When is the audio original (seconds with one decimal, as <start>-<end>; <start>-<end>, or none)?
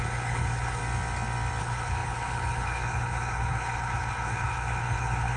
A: 0.8-1.6